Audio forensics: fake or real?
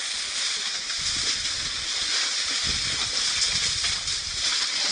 real